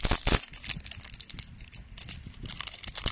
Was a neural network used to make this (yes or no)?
no